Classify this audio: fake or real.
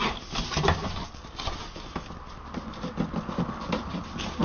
real